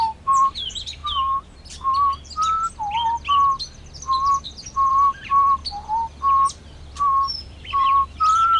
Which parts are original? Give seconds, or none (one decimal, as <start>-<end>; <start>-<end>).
1.0-4.4; 5.6-6.9